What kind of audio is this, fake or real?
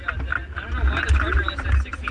real